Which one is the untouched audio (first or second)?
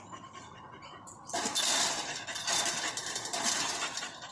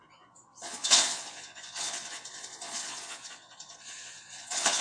first